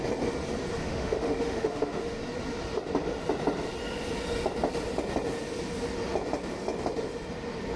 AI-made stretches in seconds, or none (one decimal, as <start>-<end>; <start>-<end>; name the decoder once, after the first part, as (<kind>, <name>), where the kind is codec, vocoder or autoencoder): 0.8-2.2 (autoencoder, DAC-VAE)